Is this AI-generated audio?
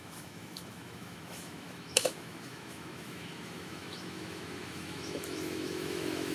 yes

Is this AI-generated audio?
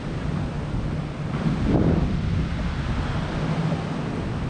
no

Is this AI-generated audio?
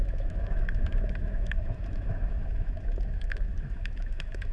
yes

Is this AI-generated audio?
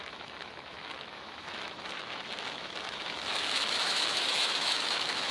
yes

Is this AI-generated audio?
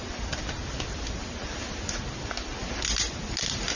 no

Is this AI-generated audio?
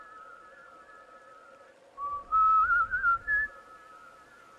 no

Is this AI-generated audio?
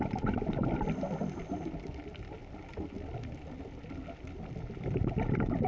no